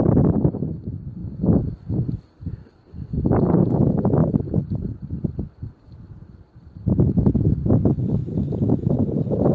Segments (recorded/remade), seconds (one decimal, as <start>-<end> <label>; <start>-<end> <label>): 0.0-9.5 recorded